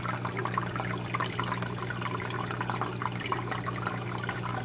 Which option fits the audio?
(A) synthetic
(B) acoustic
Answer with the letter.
B